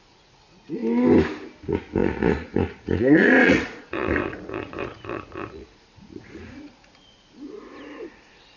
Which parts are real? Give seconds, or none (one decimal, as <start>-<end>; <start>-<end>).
0.8-1.6